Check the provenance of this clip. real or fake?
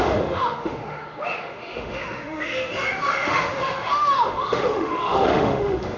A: fake